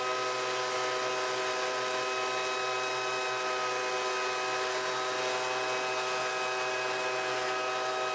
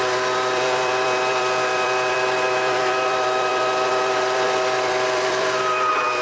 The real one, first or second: first